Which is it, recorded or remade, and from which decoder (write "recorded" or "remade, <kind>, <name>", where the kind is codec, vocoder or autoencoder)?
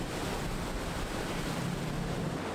remade, vocoder, BigVGAN v2